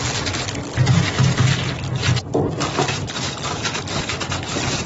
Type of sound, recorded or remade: recorded